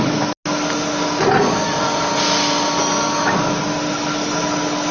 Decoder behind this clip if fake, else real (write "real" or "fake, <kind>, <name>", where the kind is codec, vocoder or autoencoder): real